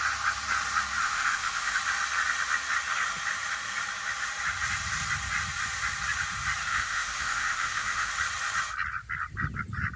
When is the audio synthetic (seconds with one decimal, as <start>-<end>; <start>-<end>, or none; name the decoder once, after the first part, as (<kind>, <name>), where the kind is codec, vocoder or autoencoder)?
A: 1.0-1.8 (autoencoder, DAC-VAE); 6.7-8.1

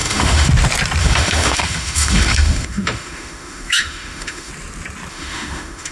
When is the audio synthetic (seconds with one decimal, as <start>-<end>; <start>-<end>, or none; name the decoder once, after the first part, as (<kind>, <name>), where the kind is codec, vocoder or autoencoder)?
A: 0.0-0.5 (autoencoder, DAC-VAE); 1.0-4.5; 5.1-5.9

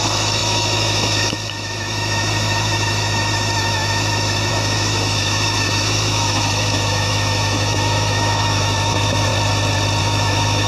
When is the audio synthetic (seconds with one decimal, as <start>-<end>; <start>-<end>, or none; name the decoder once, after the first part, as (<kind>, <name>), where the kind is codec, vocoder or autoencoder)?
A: 0.0-9.3 (autoencoder, DAC-VAE); 10.0-10.7

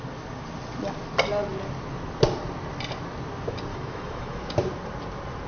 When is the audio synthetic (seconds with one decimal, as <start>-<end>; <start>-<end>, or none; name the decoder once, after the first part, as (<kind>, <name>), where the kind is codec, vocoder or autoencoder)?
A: 3.7-4.5 (autoencoder, DAC-VAE)